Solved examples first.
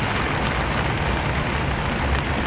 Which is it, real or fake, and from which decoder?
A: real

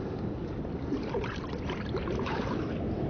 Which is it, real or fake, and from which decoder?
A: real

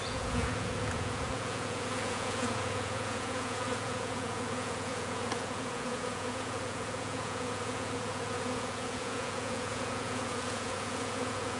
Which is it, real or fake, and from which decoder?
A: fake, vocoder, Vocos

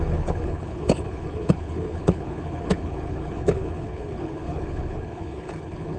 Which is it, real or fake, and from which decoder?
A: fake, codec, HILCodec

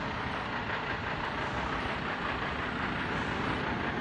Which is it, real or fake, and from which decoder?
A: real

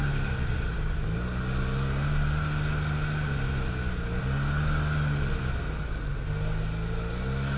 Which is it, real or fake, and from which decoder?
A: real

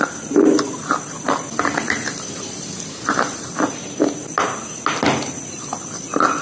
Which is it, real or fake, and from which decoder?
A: real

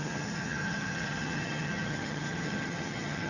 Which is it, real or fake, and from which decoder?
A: fake, vocoder, HiFi-GAN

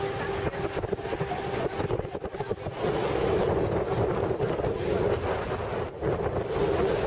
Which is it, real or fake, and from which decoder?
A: real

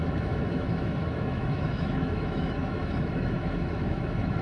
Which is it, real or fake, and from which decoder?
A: fake, autoencoder, DAC-VAE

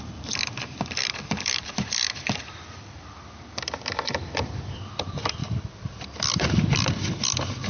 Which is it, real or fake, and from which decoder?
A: fake, vocoder, BigVGAN v2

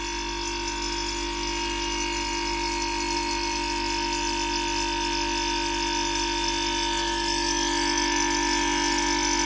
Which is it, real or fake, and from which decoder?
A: real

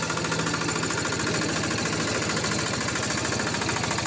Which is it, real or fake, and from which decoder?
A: real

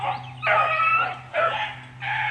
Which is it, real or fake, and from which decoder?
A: real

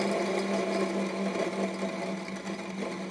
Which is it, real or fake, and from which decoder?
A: real